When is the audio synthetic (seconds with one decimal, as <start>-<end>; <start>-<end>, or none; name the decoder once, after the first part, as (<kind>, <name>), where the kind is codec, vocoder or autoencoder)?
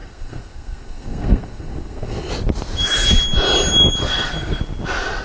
0.0-2.3 (codec, SNAC); 4.0-4.6